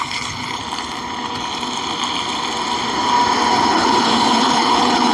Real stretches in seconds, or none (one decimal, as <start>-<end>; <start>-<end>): 0.6-3.7